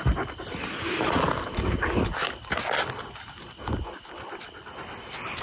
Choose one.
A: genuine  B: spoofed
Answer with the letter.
A